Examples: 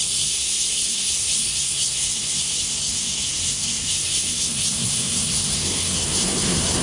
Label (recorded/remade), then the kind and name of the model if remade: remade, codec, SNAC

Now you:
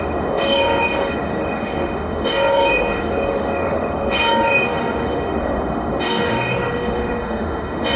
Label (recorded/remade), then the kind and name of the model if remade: remade, autoencoder, DAC-VAE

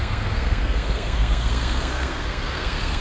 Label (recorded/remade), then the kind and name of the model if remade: remade, codec, SNAC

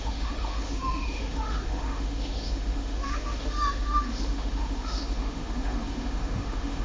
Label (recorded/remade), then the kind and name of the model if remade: remade, autoencoder, DAC-VAE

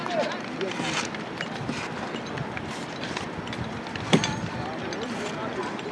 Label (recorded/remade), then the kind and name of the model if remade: recorded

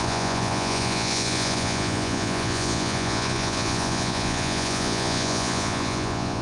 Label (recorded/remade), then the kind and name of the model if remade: remade, vocoder, Vocos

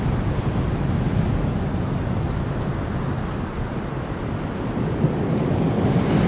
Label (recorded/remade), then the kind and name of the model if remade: recorded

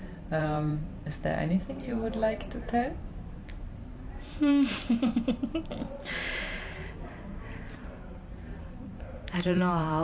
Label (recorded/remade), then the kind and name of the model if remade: remade, vocoder, BigVGAN v2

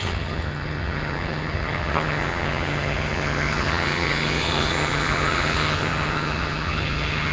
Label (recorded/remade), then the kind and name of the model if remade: remade, vocoder, HiFi-GAN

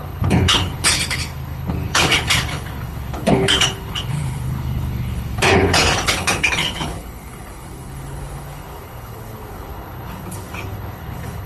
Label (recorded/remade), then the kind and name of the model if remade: remade, codec, HILCodec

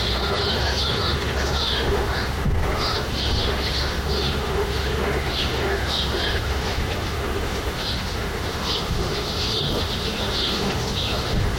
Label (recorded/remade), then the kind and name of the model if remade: remade, autoencoder, DAC-VAE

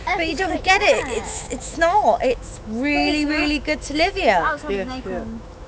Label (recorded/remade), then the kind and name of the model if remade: remade, autoencoder, DAC-VAE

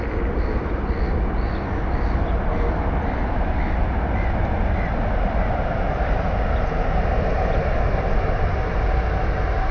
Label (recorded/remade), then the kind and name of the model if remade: recorded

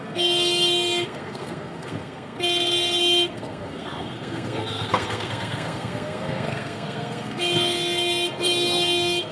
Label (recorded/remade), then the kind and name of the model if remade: remade, codec, SNAC